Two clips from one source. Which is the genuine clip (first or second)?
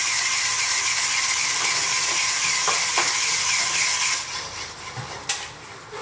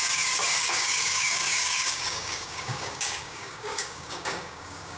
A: first